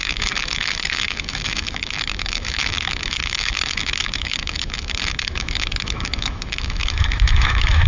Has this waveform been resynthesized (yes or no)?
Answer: yes